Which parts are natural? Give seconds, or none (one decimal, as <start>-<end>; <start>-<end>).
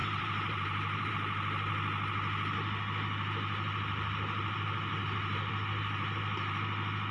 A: 1.1-5.0; 5.5-7.1